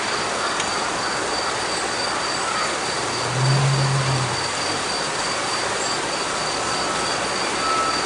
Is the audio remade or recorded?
recorded